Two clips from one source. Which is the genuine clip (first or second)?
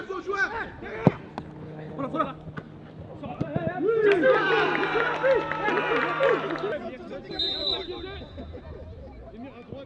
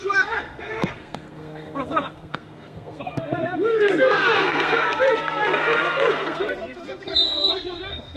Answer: first